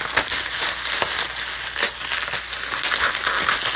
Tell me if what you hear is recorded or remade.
recorded